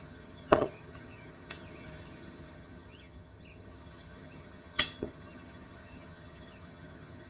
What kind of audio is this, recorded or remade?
remade